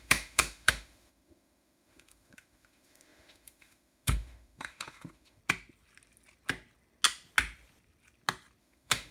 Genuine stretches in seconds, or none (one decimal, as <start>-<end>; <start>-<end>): 5.4-8.6